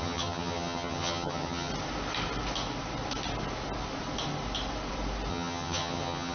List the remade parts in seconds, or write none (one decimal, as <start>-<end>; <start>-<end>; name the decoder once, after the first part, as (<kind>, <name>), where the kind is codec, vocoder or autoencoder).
0.0-1.7 (vocoder, HiFi-GAN); 5.3-6.3